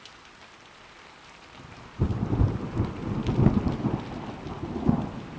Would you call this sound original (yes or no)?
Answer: no